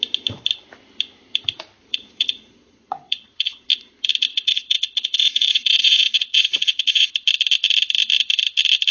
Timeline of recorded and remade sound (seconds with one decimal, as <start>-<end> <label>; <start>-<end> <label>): 0.0-1.9 recorded; 1.9-3.7 remade; 3.7-4.3 recorded; 4.3-7.1 remade; 7.1-8.9 recorded